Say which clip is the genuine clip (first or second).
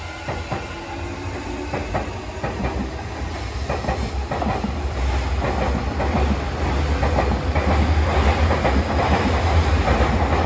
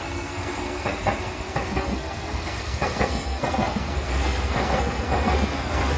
first